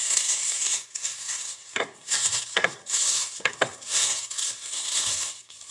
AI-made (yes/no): yes